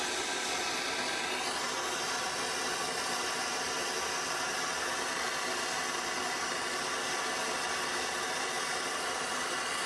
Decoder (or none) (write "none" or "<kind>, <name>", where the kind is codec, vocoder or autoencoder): none